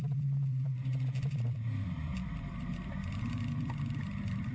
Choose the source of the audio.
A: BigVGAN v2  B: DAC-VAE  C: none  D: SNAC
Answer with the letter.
A